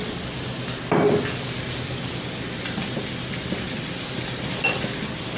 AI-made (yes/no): no